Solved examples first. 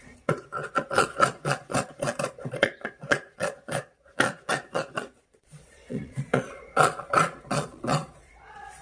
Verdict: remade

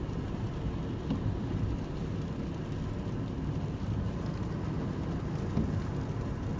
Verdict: recorded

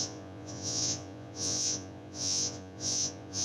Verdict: remade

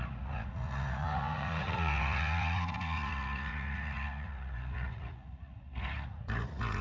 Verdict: remade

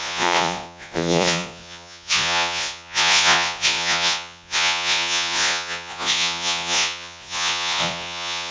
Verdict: remade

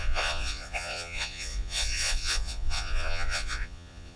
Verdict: remade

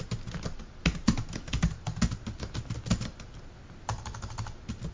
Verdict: recorded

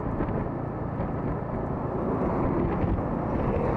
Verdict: recorded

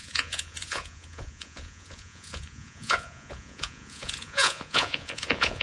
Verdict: remade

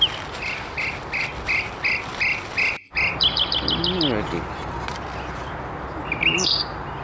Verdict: recorded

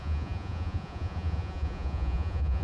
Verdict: remade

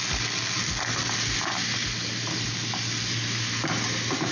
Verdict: recorded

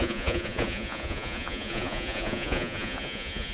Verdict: remade